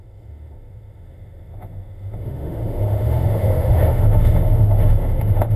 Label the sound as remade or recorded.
remade